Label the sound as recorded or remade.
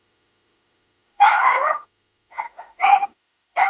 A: remade